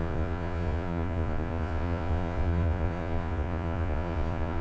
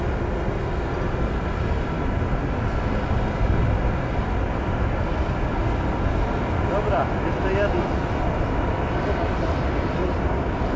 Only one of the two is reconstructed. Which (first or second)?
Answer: first